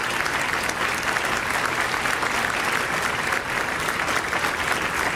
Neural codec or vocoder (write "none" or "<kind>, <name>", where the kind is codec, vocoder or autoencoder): none